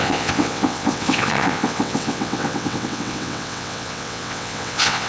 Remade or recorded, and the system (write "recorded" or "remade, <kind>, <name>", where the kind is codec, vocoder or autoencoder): remade, vocoder, WaveNeXt